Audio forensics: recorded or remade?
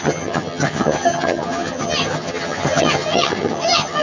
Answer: remade